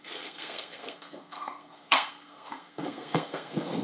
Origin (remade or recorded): remade